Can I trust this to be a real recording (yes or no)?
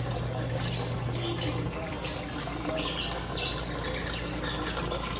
yes